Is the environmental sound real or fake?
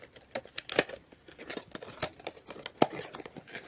real